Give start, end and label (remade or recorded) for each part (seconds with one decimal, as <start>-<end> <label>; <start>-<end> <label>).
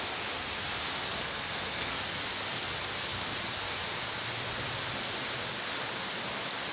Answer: 0.0-1.1 recorded; 1.1-2.0 remade; 2.0-6.7 recorded